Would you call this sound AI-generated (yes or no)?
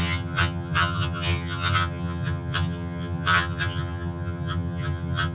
yes